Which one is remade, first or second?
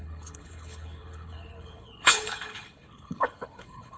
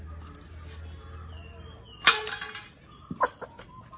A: first